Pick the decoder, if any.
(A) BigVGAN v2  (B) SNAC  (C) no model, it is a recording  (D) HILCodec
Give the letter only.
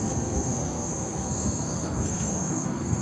B